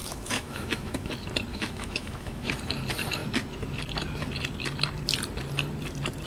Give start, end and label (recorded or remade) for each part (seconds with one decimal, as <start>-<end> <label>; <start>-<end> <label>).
0.0-1.1 remade; 1.1-1.5 recorded; 1.5-2.5 remade; 2.5-6.3 recorded